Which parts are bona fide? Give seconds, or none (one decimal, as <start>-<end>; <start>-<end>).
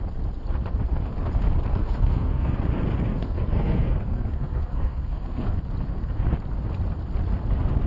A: 0.0-1.7; 2.6-3.1; 5.5-7.9